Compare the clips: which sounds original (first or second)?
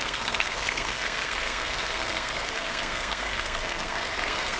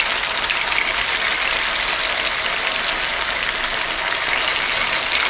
second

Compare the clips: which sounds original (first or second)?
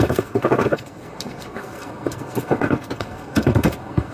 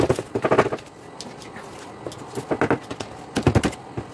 second